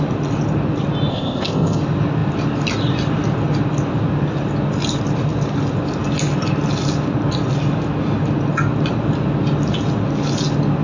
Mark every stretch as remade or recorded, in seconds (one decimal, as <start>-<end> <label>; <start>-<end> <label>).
0.0-1.1 recorded; 1.1-1.8 remade; 1.8-10.8 recorded